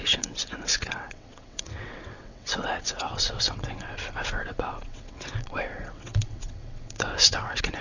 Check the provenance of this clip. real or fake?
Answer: fake